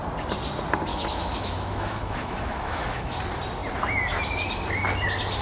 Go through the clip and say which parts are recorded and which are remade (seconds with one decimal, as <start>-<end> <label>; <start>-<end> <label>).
0.0-0.9 recorded; 0.9-3.2 remade; 3.2-5.4 recorded